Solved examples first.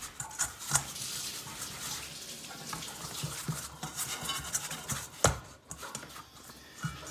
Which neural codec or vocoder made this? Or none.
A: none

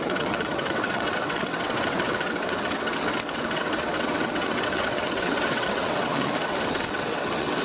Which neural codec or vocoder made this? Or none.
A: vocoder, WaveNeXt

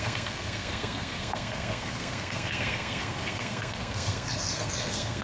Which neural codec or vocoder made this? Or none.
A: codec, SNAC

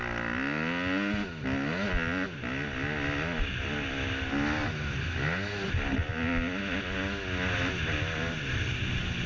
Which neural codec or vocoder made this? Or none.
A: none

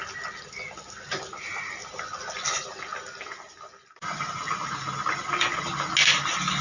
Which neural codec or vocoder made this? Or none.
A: none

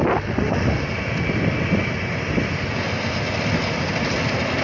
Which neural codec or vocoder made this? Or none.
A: none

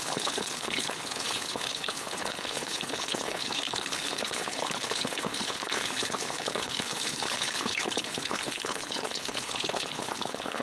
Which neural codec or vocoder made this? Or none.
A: codec, HILCodec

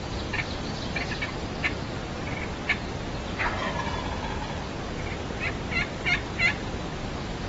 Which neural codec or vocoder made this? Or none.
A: none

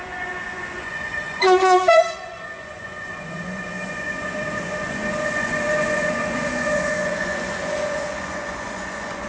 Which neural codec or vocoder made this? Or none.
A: vocoder, Vocos